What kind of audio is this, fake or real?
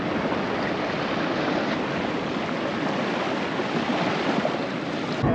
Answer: real